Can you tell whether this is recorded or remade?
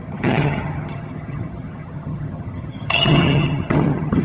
remade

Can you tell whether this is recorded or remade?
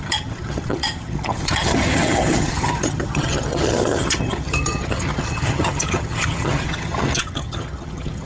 remade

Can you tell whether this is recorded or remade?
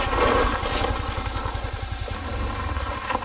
recorded